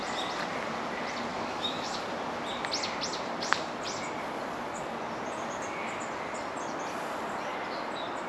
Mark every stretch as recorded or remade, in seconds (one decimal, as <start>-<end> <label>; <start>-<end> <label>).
0.0-1.3 recorded; 1.3-2.0 remade; 2.0-8.3 recorded